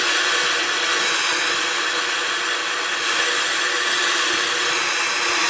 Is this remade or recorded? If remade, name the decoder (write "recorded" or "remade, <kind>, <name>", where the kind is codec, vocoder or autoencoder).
recorded